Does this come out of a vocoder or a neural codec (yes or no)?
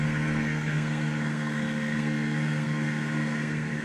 yes